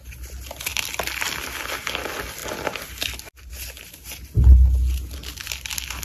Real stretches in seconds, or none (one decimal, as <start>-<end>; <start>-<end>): 0.0-0.7; 1.5-2.4; 3.5-6.0